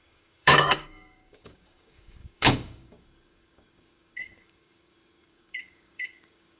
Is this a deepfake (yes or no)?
yes